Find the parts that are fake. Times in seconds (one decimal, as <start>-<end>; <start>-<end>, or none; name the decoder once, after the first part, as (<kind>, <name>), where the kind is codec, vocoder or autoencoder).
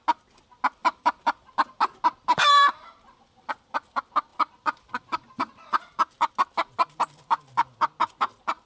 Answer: 0.8-1.5 (vocoder, BigVGAN v2); 2.3-3.1; 4.3-6.3